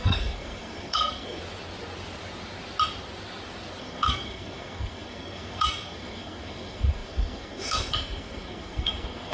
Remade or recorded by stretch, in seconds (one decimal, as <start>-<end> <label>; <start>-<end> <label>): 0.0-1.4 remade; 1.4-3.8 recorded; 3.8-9.3 remade